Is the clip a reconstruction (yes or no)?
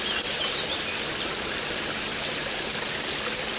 no